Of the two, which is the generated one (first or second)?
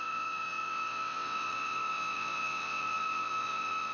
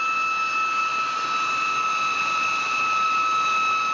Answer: first